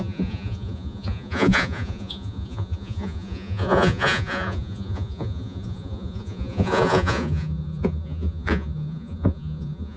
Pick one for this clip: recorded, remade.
remade